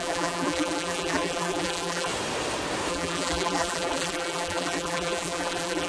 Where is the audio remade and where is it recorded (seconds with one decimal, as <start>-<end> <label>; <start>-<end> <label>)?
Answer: 0.0-2.1 remade; 2.1-2.9 recorded; 2.9-5.9 remade